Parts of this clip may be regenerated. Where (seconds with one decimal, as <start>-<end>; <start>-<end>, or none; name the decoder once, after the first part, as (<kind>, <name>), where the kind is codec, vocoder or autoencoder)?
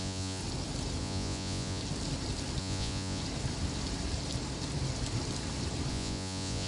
0.0-0.4 (vocoder, Vocos); 1.0-1.8; 2.6-3.2; 5.9-6.7